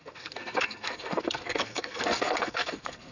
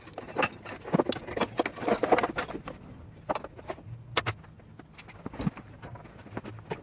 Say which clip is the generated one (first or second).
first